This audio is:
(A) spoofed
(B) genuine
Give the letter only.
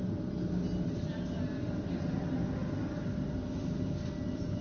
B